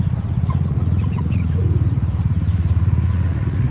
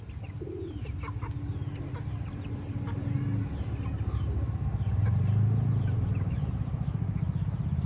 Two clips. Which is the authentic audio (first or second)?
second